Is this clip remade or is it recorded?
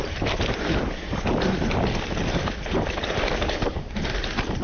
remade